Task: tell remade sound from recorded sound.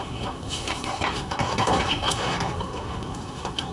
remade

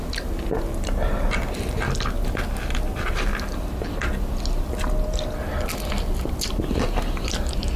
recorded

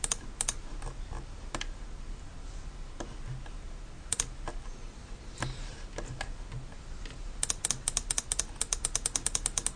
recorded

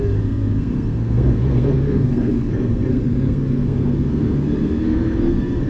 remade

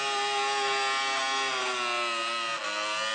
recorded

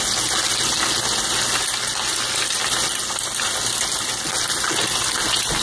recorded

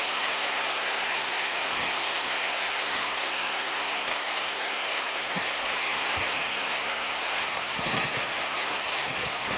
remade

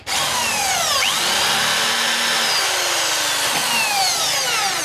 recorded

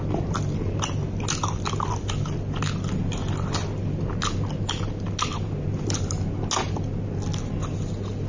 recorded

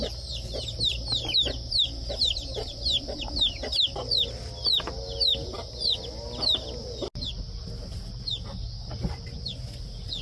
recorded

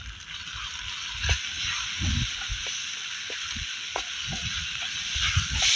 recorded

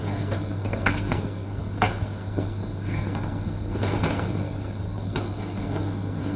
remade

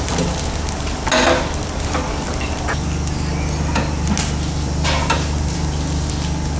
recorded